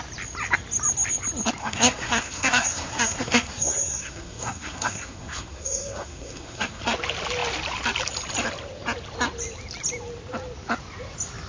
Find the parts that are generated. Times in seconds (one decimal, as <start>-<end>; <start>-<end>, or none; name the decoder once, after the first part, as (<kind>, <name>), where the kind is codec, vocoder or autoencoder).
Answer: 1.6-6.8 (codec, SNAC)